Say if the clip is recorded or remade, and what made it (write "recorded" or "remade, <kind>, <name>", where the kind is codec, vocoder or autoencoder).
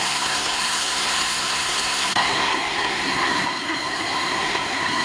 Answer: remade, codec, SNAC